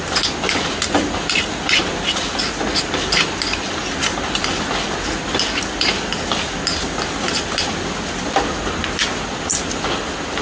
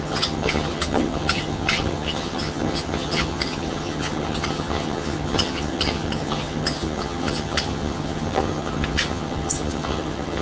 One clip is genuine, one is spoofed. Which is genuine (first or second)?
first